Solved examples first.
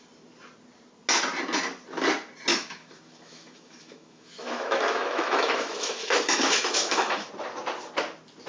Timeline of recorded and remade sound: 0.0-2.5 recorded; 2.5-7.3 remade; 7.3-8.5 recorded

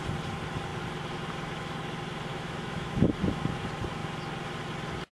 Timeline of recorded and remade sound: 0.0-2.3 recorded; 2.3-3.4 remade; 3.4-5.1 recorded

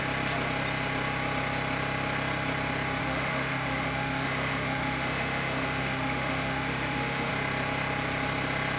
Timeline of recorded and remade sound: 0.0-3.0 recorded; 3.0-7.3 remade; 7.3-8.8 recorded